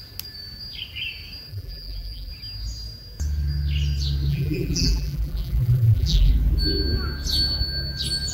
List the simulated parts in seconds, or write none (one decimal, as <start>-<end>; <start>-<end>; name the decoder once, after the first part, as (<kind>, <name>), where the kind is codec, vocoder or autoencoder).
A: 1.5-2.3 (vocoder, BigVGAN v2); 4.3-6.3